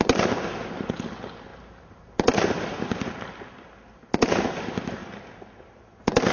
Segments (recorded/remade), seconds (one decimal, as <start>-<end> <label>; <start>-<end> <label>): 0.0-1.5 recorded; 1.5-3.1 remade; 3.1-5.0 recorded; 5.0-5.6 remade; 5.6-6.3 recorded